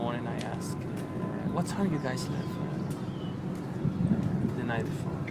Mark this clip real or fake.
real